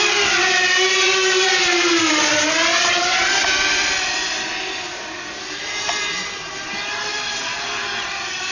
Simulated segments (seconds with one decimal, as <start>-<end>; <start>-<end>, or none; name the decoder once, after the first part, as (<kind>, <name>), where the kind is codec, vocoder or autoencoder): 0.0-3.4 (vocoder, BigVGAN v2); 6.5-8.5